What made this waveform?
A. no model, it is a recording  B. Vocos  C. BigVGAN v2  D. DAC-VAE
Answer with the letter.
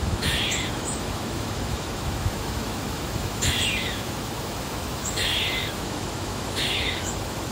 D